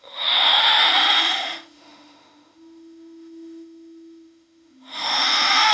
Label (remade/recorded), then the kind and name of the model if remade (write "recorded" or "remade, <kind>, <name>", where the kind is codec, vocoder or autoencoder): remade, autoencoder, DAC-VAE